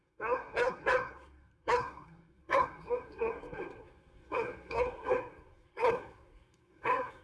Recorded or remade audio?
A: remade